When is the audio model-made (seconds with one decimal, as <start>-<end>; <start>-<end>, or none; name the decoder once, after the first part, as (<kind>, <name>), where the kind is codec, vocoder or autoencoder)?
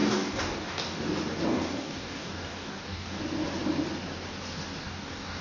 0.0-1.0 (codec, DAC); 1.5-3.2; 4.8-5.4